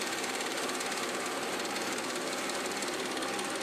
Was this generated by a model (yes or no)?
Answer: yes